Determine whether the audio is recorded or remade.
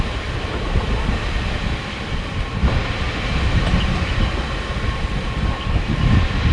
recorded